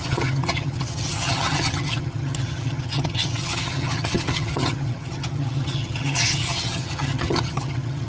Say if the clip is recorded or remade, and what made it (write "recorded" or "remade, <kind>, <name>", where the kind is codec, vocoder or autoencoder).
remade, vocoder, HiFi-GAN